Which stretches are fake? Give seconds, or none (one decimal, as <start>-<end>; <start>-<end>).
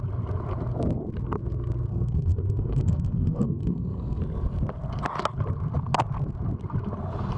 1.9-4.2